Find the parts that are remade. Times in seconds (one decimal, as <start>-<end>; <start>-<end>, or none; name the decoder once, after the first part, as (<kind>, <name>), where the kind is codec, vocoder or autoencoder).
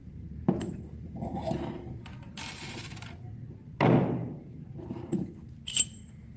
0.0-3.8 (vocoder, BigVGAN v2); 4.2-5.3